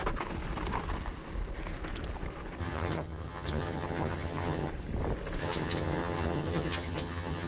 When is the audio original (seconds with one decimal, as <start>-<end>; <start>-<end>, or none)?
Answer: 0.0-2.6; 4.7-5.4